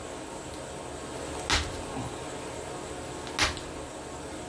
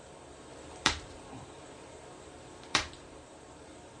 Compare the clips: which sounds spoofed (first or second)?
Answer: second